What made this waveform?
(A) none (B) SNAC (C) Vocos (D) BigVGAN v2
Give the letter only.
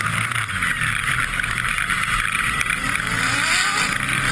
A